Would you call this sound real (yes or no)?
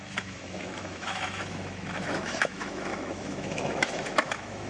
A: no